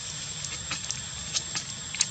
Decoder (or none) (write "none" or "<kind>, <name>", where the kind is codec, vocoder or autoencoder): none